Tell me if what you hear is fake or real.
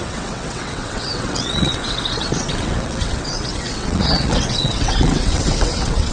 fake